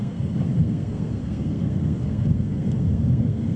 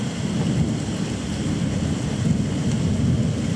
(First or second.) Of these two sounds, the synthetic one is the first